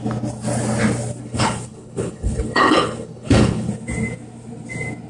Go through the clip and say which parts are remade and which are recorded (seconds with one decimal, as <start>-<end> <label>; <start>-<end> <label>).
0.0-1.2 recorded; 1.2-3.7 remade; 3.7-5.1 recorded